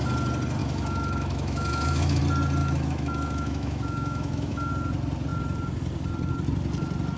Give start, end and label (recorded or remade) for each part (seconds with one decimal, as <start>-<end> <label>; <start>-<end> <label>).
0.0-0.6 recorded; 0.6-2.2 remade; 2.2-2.6 recorded; 2.6-4.7 remade; 4.7-7.2 recorded

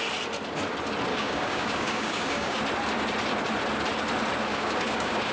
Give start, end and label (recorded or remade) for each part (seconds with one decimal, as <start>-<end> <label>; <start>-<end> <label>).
0.0-1.1 recorded; 1.1-2.6 remade; 2.6-4.5 recorded; 4.5-5.3 remade

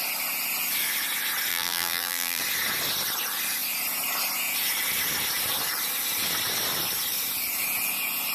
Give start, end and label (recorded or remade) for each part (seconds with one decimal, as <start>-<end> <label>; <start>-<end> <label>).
0.0-1.5 recorded; 1.5-2.4 remade; 2.4-8.3 recorded

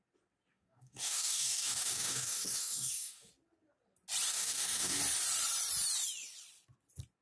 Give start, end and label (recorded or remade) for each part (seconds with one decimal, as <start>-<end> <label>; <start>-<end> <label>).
0.0-0.5 recorded; 0.5-3.3 remade; 3.3-4.3 recorded; 4.3-5.0 remade; 5.0-7.2 recorded

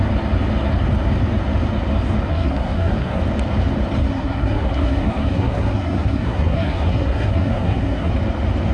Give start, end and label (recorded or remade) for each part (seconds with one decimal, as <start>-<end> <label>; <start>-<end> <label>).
0.0-2.3 recorded; 2.3-3.2 remade; 3.2-4.0 recorded; 4.0-8.1 remade; 8.1-8.7 recorded

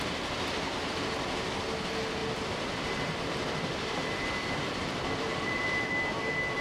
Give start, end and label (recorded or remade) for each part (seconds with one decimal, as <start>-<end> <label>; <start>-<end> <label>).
0.0-2.2 recorded; 2.2-5.9 remade; 5.9-6.6 recorded

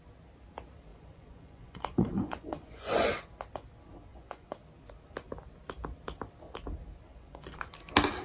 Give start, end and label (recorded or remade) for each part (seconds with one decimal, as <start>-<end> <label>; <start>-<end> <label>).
0.0-0.9 recorded; 0.9-3.2 remade; 3.2-4.1 recorded; 4.1-4.6 remade; 4.6-7.1 recorded; 7.1-7.7 remade; 7.7-8.2 recorded

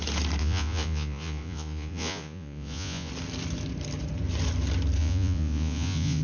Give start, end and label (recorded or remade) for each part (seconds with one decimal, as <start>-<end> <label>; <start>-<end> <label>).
0.0-0.4 recorded; 0.4-3.1 remade; 3.1-5.0 recorded; 5.0-6.2 remade